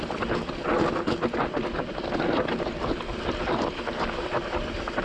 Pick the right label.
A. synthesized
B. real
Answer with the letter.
B